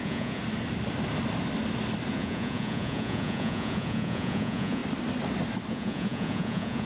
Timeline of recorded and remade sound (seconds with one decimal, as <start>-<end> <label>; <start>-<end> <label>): 0.0-0.4 remade; 0.4-2.1 recorded; 2.1-4.8 remade; 4.8-5.7 recorded; 5.7-6.9 remade